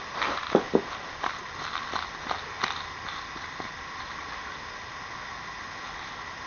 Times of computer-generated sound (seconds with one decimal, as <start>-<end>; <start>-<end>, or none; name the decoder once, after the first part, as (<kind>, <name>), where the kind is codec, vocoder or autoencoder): none